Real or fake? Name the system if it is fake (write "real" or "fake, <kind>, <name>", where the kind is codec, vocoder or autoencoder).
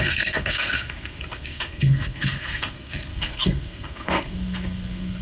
fake, codec, SNAC